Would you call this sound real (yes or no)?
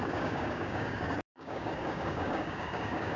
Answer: no